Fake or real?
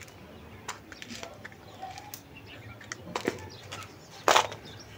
real